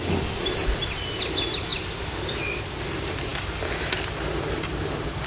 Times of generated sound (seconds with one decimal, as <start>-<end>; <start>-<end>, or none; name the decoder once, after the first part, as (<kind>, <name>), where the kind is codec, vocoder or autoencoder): none